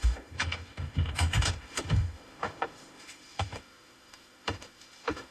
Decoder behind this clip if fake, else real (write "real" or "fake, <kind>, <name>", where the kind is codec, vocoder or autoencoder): fake, autoencoder, DAC-VAE